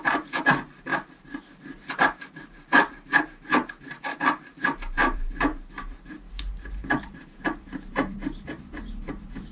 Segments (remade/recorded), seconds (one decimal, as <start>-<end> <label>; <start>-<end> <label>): 0.0-0.9 remade; 0.9-1.9 recorded; 1.9-3.5 remade; 3.5-4.1 recorded; 4.1-9.5 remade